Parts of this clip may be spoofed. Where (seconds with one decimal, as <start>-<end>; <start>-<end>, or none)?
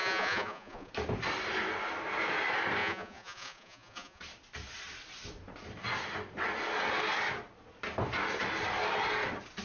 0.0-0.9; 2.8-4.2